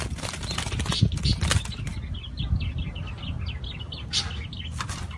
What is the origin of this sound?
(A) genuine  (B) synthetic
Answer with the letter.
A